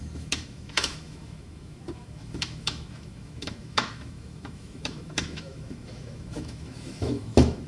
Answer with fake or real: fake